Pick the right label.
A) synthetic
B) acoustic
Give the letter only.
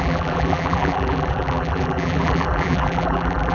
A